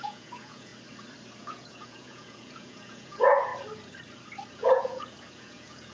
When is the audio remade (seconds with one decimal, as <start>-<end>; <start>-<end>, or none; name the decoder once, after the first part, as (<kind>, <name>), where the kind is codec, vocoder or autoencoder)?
0.0-0.7 (vocoder, Vocos); 1.4-3.5; 4.5-5.9